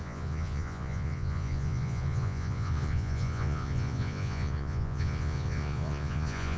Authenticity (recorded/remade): remade